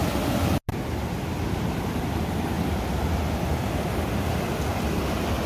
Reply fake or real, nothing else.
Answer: real